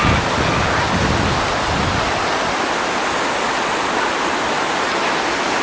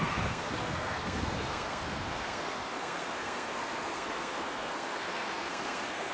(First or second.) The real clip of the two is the first